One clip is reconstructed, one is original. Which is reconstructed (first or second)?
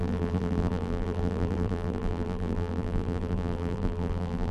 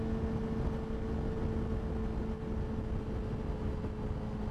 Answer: first